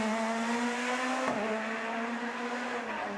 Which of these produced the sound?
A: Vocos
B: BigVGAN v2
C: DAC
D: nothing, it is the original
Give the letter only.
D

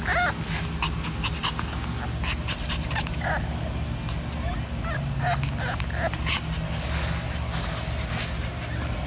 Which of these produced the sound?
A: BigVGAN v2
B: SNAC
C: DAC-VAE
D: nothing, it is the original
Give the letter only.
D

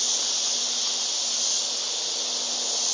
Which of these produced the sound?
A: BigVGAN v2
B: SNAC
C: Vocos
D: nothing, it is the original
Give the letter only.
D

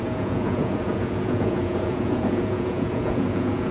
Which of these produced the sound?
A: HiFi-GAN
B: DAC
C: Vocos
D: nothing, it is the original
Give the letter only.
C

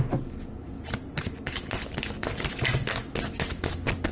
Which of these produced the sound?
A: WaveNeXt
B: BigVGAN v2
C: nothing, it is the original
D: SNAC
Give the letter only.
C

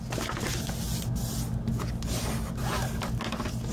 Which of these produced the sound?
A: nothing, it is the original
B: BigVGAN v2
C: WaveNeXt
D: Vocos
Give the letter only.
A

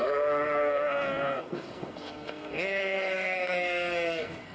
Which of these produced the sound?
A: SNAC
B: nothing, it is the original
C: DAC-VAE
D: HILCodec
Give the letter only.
A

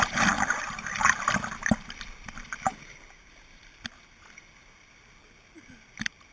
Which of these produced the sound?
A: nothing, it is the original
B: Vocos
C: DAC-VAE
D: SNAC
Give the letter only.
A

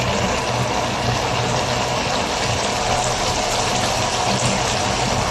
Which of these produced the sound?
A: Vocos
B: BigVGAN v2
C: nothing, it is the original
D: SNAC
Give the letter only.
C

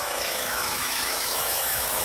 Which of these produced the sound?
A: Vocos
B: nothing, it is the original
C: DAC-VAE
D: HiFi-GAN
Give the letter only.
C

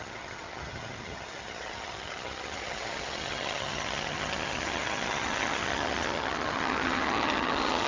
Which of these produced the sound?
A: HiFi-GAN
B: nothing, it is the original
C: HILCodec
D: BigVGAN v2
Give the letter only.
A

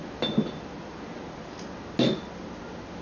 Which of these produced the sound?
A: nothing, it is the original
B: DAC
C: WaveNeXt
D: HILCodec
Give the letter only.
A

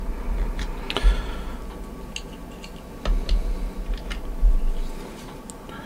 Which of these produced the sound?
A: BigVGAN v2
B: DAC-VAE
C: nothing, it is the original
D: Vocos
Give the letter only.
C